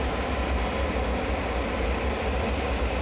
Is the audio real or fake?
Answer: real